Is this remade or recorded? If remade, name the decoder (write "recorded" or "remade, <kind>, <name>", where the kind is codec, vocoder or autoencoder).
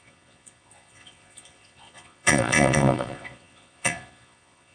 remade, vocoder, Vocos